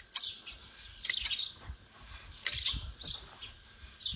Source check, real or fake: real